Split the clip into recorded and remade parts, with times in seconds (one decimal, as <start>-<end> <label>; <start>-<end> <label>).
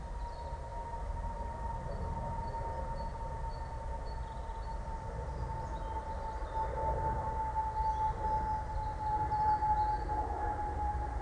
0.0-11.2 recorded